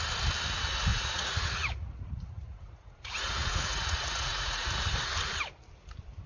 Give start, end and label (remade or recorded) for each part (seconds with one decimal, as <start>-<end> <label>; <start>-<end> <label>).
0.0-0.9 recorded; 0.9-4.7 remade; 4.7-6.3 recorded